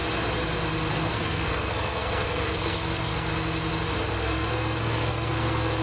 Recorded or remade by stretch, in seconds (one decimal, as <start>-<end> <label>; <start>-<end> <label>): 0.0-0.9 recorded; 0.9-3.3 remade; 3.3-4.1 recorded; 4.1-5.8 remade